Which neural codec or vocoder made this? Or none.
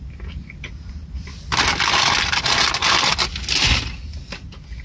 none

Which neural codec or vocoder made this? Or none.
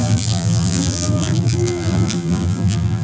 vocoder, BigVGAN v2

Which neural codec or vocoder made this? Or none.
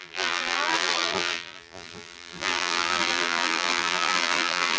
vocoder, BigVGAN v2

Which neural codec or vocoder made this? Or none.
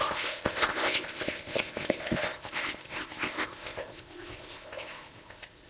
codec, ZipCodec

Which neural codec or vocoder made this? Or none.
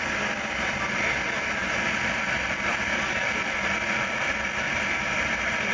none